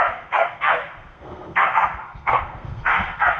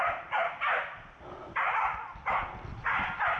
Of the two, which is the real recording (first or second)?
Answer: second